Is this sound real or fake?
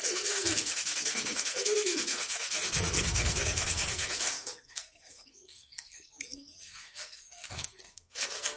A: fake